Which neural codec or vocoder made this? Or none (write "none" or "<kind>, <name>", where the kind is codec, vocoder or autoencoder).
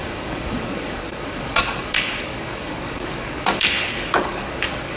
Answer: codec, DAC